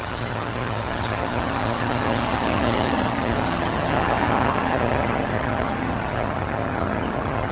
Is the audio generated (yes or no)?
yes